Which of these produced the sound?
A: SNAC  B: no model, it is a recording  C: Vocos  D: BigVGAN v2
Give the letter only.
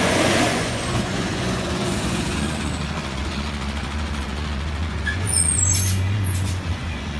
C